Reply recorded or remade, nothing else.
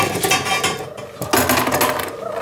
recorded